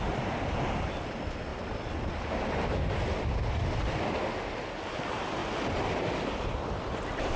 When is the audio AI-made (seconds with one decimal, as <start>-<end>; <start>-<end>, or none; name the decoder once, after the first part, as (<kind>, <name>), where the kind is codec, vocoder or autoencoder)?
none